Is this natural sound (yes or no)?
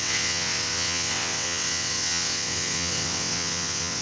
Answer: no